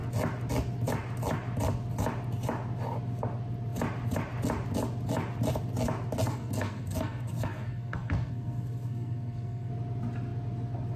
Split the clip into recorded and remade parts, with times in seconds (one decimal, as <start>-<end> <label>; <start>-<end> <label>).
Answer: 0.0-6.2 recorded; 6.2-9.7 remade; 9.7-11.0 recorded